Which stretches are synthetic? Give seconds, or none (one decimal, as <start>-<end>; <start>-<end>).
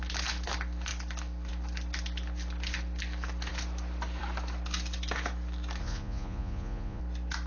5.8-7.0